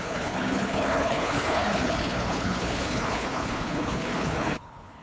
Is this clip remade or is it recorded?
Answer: remade